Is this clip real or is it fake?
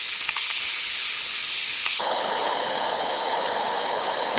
fake